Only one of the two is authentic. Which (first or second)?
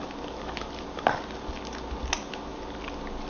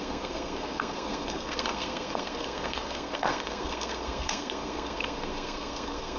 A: first